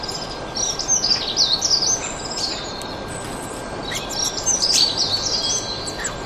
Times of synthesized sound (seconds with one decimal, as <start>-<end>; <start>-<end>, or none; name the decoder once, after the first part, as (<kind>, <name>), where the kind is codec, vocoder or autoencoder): 4.5-5.1 (vocoder, BigVGAN v2)